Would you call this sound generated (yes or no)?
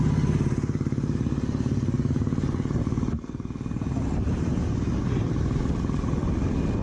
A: no